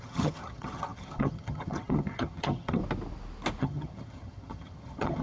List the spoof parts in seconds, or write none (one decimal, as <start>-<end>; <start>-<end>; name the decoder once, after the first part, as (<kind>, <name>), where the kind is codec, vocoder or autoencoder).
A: 0.0-2.8 (vocoder, HiFi-GAN); 3.6-5.2